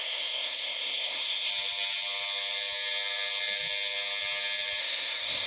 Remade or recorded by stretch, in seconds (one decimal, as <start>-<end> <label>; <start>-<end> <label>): 0.0-1.5 remade; 1.5-4.8 recorded; 4.8-5.5 remade